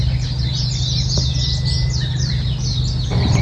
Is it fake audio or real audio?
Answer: real